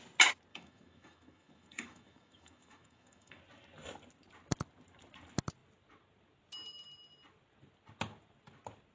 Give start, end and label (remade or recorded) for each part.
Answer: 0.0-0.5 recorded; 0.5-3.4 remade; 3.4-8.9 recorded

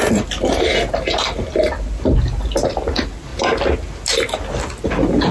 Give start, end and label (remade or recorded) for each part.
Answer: 0.0-5.3 recorded

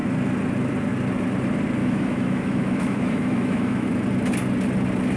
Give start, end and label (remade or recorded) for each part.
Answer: 0.0-1.8 recorded; 1.8-3.9 remade; 3.9-5.2 recorded

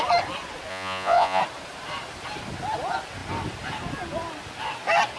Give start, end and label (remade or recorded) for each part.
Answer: 0.0-0.7 recorded; 0.7-1.4 remade; 1.4-5.2 recorded

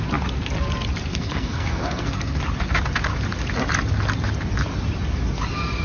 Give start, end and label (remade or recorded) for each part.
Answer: 0.0-1.1 recorded; 1.1-2.4 remade; 2.4-5.8 recorded

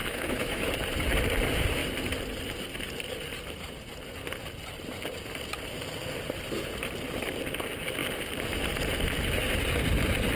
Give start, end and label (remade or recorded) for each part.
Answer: 0.0-0.7 remade; 0.7-10.4 recorded